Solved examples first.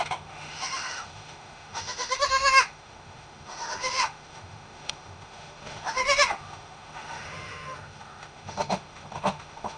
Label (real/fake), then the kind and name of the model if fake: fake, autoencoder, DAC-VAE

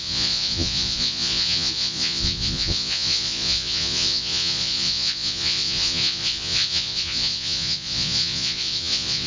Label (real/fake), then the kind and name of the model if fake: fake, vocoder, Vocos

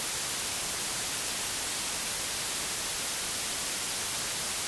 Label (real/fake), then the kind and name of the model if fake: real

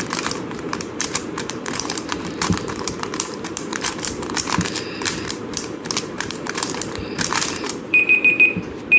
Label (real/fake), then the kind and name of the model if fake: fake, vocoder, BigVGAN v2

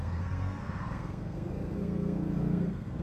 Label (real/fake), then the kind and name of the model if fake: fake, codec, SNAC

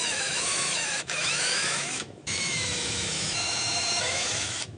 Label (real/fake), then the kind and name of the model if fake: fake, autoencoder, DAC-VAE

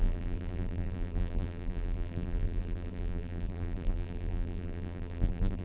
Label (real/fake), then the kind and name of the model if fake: fake, vocoder, BigVGAN v2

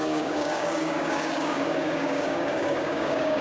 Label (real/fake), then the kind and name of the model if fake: fake, codec, DAC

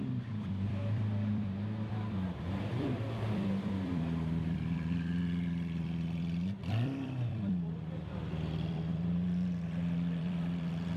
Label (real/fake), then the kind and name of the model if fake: fake, vocoder, BigVGAN v2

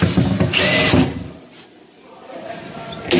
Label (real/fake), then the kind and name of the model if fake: real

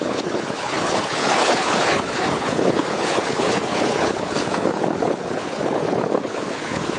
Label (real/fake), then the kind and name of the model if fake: fake, codec, HILCodec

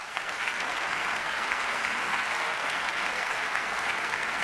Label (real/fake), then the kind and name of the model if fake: fake, codec, SNAC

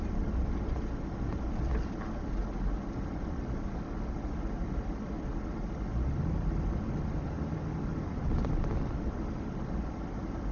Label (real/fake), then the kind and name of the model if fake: real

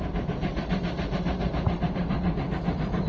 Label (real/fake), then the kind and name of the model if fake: real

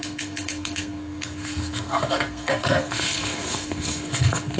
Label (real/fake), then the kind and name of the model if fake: fake, codec, SNAC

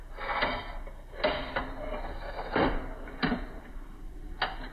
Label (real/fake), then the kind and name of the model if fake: real